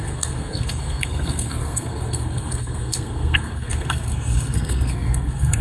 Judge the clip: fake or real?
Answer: fake